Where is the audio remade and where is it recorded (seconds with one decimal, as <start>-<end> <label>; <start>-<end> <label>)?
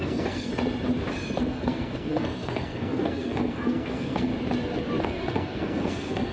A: 0.0-0.5 remade; 0.5-1.4 recorded; 1.4-4.3 remade; 4.3-5.0 recorded; 5.0-6.3 remade